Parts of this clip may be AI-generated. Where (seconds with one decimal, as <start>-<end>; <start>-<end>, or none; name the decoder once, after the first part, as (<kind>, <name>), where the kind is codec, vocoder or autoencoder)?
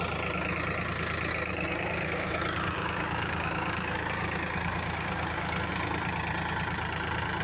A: 1.3-5.7 (codec, DAC)